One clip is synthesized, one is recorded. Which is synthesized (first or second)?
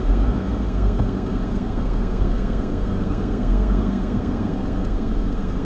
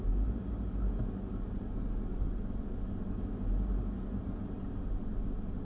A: first